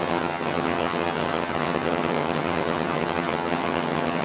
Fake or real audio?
fake